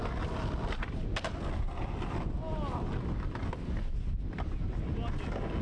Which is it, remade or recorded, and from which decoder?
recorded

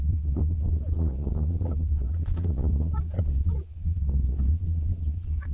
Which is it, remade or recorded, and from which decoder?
remade, vocoder, Vocos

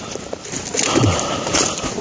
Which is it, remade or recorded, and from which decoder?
recorded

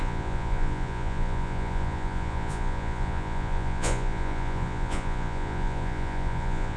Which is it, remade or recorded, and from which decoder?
remade, vocoder, Vocos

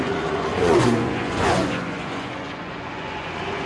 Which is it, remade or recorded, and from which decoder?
remade, vocoder, Vocos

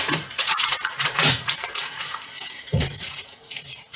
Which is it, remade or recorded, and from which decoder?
remade, vocoder, Vocos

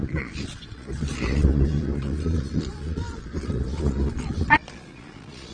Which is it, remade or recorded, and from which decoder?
remade, vocoder, Vocos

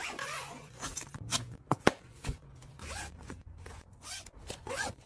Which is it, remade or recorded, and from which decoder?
remade, vocoder, Vocos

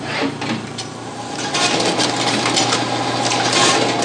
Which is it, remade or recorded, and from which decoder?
recorded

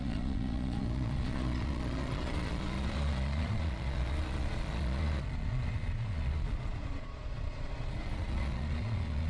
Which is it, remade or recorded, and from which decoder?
remade, vocoder, Vocos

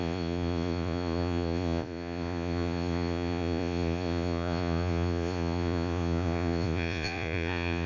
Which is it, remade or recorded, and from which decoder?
remade, vocoder, Vocos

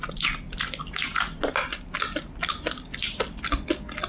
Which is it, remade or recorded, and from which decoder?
recorded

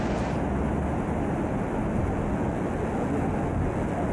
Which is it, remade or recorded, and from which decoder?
recorded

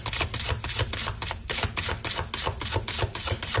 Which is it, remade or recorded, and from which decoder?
recorded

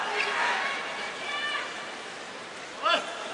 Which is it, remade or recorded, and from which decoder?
recorded